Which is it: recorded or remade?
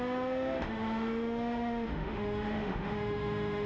remade